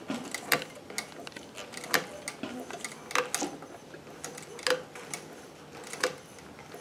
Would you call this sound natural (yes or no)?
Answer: yes